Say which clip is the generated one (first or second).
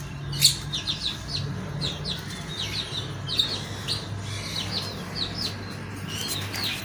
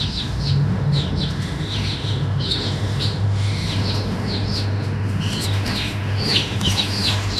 second